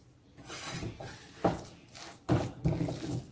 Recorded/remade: recorded